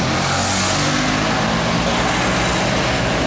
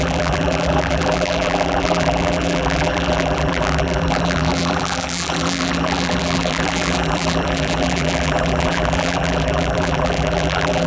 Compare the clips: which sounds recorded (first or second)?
first